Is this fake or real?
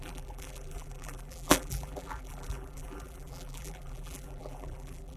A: fake